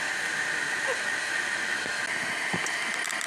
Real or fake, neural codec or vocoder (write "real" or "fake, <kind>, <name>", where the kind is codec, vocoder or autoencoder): real